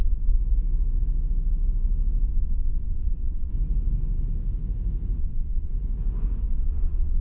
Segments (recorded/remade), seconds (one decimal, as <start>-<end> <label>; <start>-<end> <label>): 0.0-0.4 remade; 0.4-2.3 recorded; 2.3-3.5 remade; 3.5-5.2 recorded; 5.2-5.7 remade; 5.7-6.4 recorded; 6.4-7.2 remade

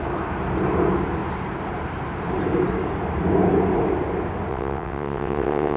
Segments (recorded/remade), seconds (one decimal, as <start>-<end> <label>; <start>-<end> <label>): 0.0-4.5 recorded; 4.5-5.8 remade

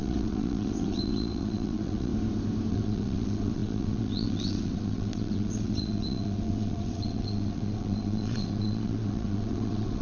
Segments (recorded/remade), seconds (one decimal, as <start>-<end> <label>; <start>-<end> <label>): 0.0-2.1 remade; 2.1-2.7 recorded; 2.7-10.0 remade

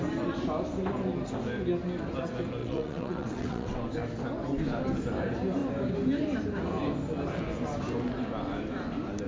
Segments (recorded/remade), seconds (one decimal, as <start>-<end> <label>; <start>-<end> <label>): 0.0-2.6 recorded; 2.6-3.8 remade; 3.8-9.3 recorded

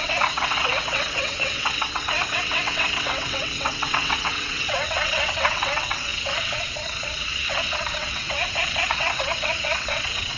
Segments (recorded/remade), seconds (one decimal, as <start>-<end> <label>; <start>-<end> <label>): 0.0-10.4 remade

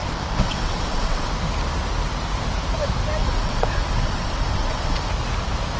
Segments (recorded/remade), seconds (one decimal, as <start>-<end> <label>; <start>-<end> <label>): 0.0-1.3 remade; 1.3-3.2 recorded; 3.2-5.1 remade; 5.1-5.8 recorded

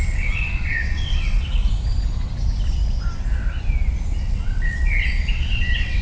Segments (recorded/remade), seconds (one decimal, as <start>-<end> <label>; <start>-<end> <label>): 0.0-1.6 remade; 1.6-4.2 recorded; 4.2-6.0 remade

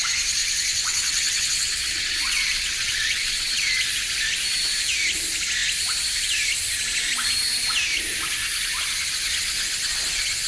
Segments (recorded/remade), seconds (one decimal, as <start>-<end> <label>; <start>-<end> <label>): 0.0-0.4 recorded; 0.4-3.9 remade; 3.9-10.5 recorded